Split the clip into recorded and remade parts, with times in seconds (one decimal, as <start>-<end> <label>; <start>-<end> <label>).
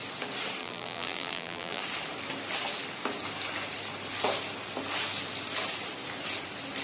0.0-0.6 recorded; 0.6-1.8 remade; 1.8-6.8 recorded